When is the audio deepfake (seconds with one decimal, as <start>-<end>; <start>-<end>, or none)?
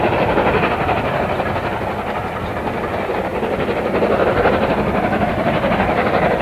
none